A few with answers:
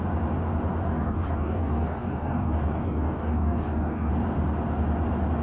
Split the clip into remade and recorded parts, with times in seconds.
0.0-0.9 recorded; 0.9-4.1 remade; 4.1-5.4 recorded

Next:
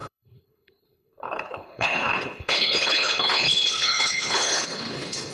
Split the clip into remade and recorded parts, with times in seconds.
0.0-5.3 remade

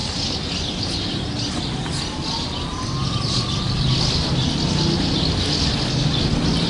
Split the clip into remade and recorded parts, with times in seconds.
0.0-6.7 recorded

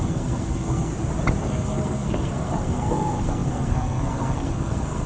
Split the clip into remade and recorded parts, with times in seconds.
0.0-0.9 remade; 0.9-1.4 recorded; 1.4-5.1 remade